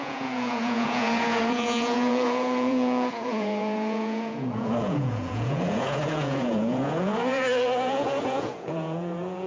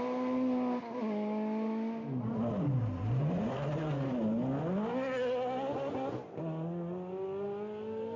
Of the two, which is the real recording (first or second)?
second